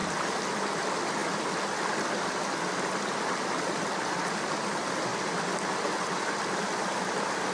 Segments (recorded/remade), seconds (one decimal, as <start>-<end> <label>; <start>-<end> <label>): 0.0-7.5 recorded